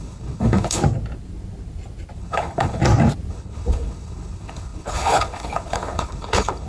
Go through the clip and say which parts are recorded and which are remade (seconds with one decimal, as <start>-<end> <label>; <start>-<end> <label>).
0.0-0.8 remade; 0.8-2.2 recorded; 2.2-2.8 remade; 2.8-3.3 recorded; 3.3-6.7 remade